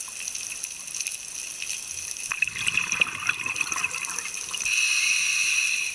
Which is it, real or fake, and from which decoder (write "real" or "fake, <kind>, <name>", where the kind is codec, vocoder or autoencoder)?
real